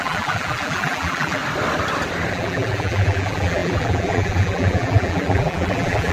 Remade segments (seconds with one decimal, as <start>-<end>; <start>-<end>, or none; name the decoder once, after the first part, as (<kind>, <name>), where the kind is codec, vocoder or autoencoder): 0.0-1.4 (vocoder, BigVGAN v2); 2.3-6.1